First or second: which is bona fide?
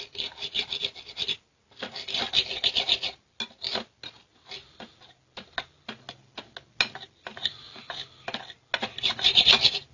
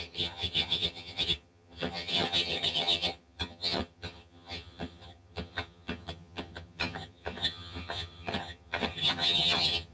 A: first